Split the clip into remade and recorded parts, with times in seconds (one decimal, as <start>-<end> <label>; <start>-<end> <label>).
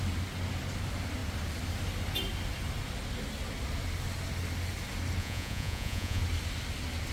0.0-5.2 recorded; 5.2-6.2 remade; 6.2-7.1 recorded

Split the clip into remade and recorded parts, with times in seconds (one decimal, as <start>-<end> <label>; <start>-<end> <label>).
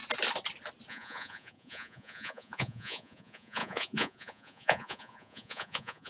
0.0-0.9 recorded; 0.9-6.1 remade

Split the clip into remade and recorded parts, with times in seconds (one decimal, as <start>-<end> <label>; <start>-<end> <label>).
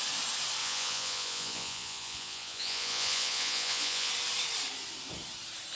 0.0-0.6 recorded; 0.6-4.1 remade; 4.1-5.8 recorded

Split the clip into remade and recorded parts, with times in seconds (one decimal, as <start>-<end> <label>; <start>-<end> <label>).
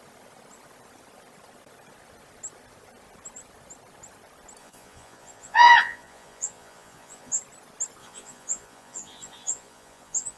0.0-4.6 recorded; 4.6-7.4 remade; 7.4-8.0 recorded; 8.0-10.4 remade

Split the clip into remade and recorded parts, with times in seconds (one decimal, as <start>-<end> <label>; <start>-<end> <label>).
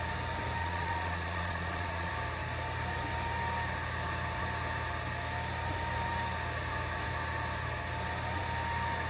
0.0-0.6 recorded; 0.6-2.1 remade; 2.1-9.1 recorded